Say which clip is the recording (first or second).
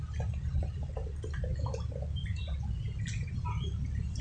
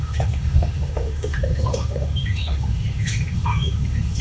first